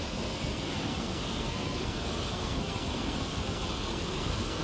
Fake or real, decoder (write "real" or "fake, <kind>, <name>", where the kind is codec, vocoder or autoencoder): fake, codec, SNAC